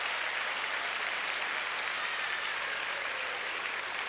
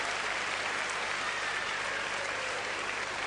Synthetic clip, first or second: second